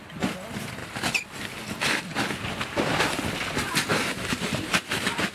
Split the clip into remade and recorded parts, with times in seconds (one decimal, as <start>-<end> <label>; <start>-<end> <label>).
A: 0.0-3.9 recorded; 3.9-4.4 remade; 4.4-5.3 recorded